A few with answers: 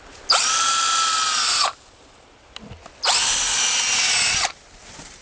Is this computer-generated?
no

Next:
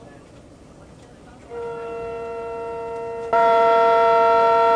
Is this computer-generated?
no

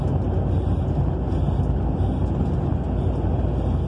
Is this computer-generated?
no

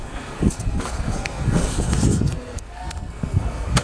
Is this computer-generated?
yes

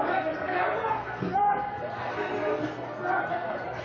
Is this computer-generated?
yes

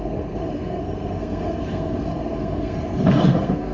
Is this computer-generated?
yes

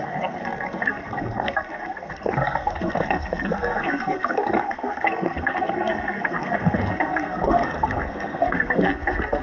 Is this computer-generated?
yes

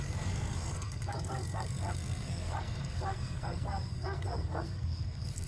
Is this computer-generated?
yes